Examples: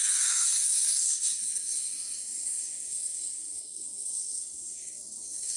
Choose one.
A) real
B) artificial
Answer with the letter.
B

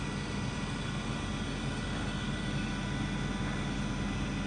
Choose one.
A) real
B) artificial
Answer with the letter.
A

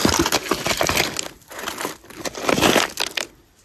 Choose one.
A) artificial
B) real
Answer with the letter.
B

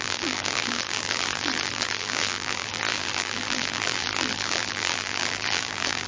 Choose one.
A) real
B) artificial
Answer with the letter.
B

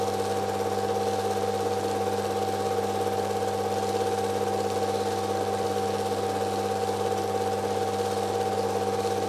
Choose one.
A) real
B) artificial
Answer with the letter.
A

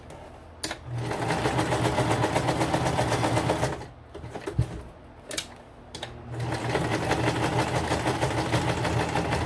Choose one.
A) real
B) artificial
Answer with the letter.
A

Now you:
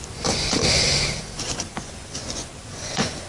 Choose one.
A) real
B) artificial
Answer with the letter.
B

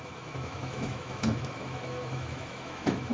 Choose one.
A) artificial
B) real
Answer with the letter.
A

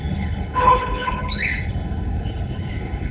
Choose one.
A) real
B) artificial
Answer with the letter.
B